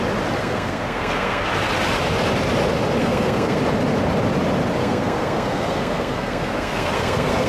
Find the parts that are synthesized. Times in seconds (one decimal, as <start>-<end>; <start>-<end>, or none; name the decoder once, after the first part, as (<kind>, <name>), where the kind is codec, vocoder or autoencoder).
0.4-1.5 (codec, SNAC); 3.0-3.6; 4.8-7.5